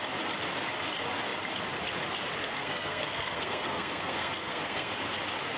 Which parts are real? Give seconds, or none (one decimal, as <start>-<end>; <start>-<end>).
0.0-2.4; 4.9-5.6